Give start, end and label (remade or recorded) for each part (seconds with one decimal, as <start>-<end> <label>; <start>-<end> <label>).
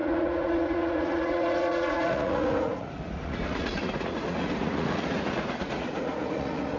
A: 0.0-6.8 remade